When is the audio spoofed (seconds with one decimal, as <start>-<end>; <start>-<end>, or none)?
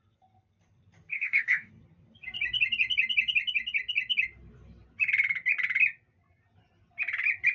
1.1-1.7